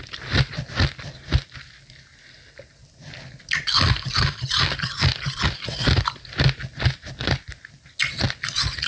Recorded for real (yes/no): yes